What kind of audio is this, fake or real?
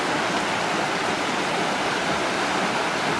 real